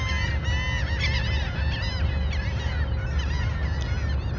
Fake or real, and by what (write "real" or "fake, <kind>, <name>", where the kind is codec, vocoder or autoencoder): real